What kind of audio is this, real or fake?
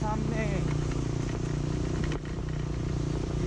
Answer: real